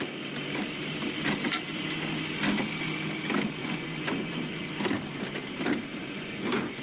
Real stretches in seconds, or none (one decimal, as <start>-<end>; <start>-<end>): 0.0-3.6; 4.7-5.9